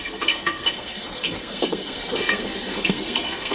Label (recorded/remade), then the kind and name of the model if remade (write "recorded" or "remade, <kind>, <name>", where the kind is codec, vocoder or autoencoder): remade, codec, SNAC